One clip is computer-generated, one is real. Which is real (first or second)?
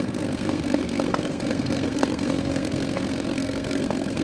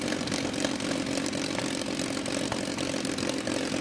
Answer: second